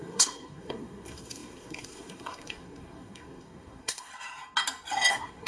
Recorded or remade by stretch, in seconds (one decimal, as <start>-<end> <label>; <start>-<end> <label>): 0.0-4.1 remade; 4.1-5.1 recorded; 5.1-5.5 remade